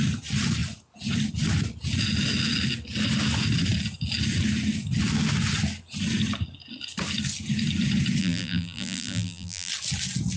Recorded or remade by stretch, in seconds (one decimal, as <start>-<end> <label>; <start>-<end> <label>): 0.0-8.2 recorded; 8.2-9.7 remade; 9.7-10.4 recorded